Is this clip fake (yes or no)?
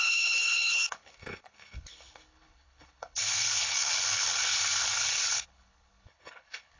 yes